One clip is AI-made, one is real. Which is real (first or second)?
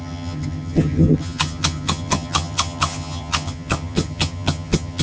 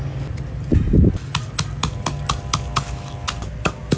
second